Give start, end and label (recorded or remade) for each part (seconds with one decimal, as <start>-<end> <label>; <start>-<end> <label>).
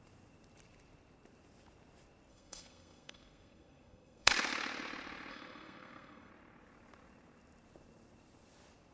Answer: 0.0-2.3 recorded; 2.3-4.3 remade; 4.3-5.3 recorded; 5.3-6.3 remade; 6.3-8.9 recorded